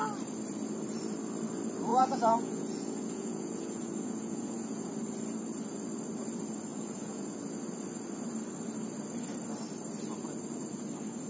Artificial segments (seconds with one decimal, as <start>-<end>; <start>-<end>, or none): 1.9-4.9; 6.7-7.4